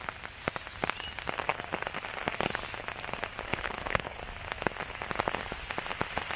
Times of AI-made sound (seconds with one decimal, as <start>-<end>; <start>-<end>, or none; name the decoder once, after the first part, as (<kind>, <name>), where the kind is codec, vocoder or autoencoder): 3.5-4.2 (codec, HILCodec)